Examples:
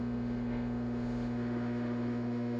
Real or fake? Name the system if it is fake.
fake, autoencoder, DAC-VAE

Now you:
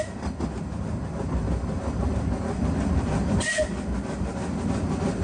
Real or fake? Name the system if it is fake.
real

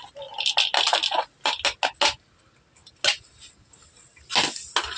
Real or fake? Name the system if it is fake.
real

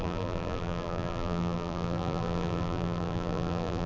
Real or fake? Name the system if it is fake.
fake, vocoder, BigVGAN v2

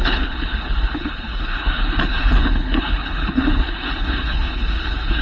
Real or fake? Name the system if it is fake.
fake, codec, HILCodec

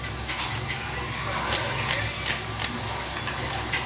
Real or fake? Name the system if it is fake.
real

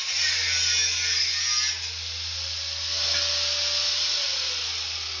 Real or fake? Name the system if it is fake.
real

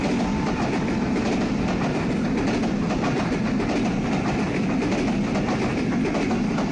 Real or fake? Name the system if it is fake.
real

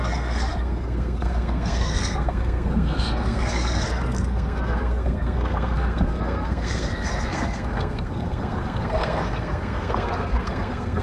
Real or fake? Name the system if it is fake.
fake, codec, SNAC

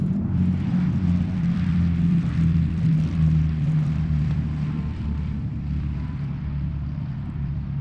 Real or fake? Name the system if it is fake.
fake, vocoder, BigVGAN v2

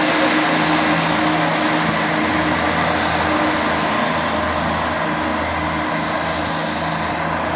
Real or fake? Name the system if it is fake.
real